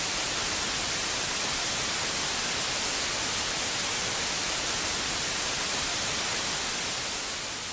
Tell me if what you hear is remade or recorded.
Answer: recorded